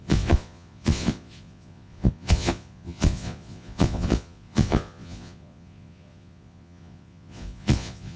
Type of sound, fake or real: fake